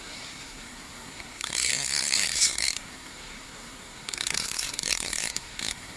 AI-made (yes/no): yes